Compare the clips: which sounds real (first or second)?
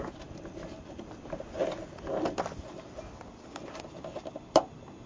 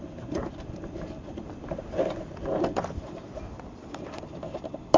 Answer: first